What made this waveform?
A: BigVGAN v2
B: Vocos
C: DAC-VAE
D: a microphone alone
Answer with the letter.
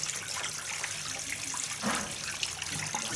D